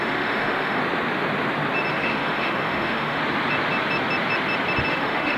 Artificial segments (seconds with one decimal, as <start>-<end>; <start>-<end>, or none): 0.0-0.8; 1.9-3.2; 4.9-5.4